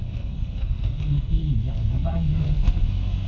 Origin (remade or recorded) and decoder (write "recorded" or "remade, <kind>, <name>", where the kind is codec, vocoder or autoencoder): remade, codec, SNAC